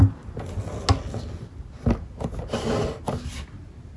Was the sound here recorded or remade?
recorded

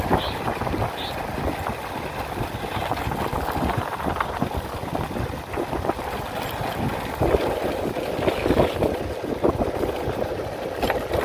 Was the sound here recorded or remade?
recorded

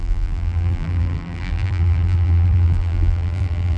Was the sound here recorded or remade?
remade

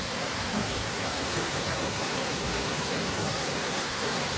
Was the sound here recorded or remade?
remade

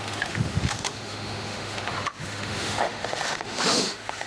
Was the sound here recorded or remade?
remade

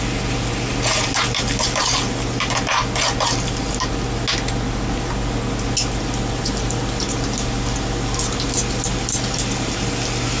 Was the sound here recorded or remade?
recorded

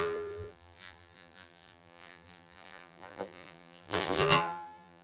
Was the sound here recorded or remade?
remade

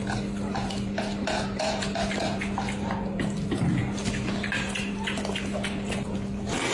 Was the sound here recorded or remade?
recorded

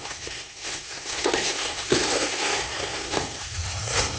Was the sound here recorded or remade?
remade